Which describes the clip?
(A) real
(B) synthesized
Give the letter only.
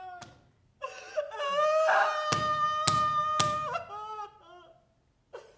A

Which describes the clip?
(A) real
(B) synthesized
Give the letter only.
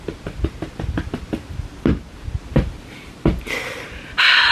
A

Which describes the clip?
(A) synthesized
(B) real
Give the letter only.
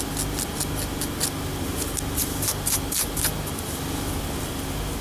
B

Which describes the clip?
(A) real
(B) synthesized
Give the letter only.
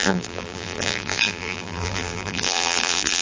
B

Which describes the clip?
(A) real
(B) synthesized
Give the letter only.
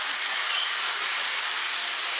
A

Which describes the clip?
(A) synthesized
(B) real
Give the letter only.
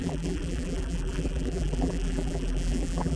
A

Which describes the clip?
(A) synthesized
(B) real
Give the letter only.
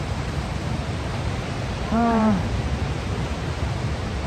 A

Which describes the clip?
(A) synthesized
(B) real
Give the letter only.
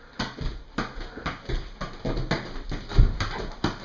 B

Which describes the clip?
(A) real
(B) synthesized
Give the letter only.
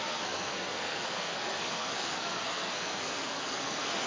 B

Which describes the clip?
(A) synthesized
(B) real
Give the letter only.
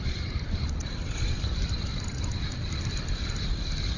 B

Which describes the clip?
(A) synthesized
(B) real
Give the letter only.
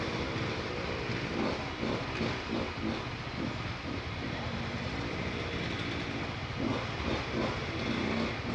B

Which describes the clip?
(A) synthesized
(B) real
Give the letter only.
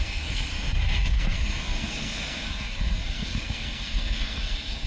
A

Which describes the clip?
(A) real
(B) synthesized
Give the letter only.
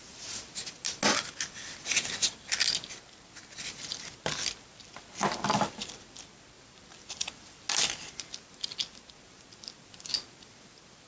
A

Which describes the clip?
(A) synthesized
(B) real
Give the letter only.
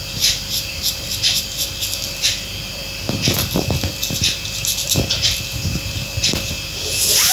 B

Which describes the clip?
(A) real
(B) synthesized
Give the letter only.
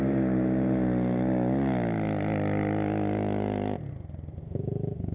A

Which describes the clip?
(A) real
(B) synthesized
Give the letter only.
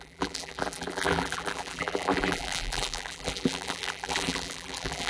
B